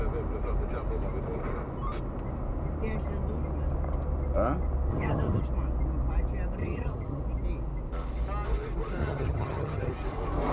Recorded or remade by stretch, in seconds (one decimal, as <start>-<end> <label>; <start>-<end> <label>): 0.0-4.9 recorded; 4.9-5.4 remade; 5.4-6.6 recorded; 6.6-7.2 remade; 7.2-9.0 recorded; 9.0-9.9 remade; 9.9-10.5 recorded